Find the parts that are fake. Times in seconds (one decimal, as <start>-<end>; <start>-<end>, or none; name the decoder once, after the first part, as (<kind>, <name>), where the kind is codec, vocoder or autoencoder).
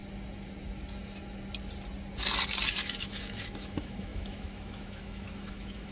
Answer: 3.0-5.9 (autoencoder, DAC-VAE)